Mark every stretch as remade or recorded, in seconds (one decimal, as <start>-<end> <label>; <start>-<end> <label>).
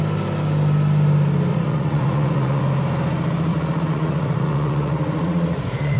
0.0-1.5 recorded; 1.5-2.6 remade; 2.6-3.5 recorded; 3.5-6.0 remade